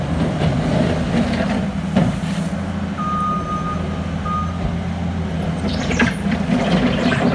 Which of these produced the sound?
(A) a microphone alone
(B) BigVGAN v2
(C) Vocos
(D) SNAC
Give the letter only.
A